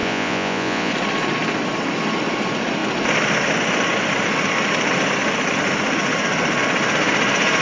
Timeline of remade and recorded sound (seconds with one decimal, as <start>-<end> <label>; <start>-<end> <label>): 0.0-0.9 remade; 0.9-7.6 recorded